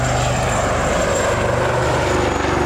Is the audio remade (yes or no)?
no